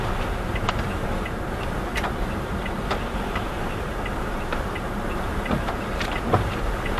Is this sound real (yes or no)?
no